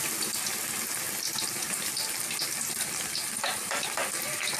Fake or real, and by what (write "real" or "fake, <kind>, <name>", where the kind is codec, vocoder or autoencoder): real